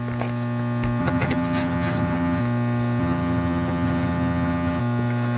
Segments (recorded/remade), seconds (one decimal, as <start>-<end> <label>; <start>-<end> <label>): 0.0-1.0 recorded; 1.0-2.4 remade; 2.4-3.0 recorded; 3.0-4.8 remade; 4.8-5.4 recorded